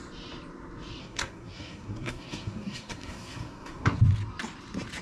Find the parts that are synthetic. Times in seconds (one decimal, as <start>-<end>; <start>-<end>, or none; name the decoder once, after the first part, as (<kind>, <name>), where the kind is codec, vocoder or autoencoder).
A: 1.0-4.0 (codec, SNAC)